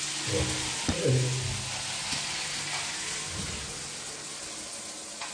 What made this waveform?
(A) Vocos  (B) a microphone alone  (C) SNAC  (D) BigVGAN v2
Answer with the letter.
B